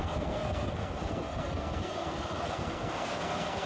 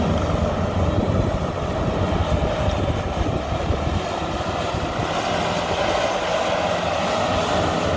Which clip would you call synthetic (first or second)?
first